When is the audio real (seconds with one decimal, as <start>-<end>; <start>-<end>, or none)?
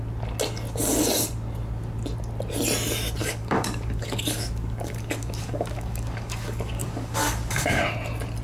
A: 0.0-3.2; 7.8-8.4